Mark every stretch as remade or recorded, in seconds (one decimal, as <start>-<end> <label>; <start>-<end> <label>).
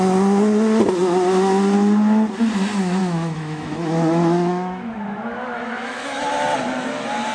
0.0-3.0 recorded; 3.0-6.2 remade; 6.2-7.3 recorded